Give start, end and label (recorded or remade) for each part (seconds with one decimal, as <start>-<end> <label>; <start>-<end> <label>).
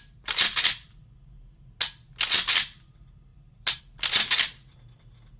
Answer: 0.0-3.3 recorded; 3.3-3.8 remade; 3.8-5.4 recorded